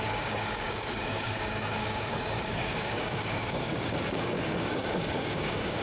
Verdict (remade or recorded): remade